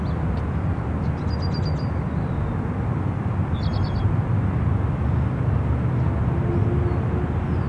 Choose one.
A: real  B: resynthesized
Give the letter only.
A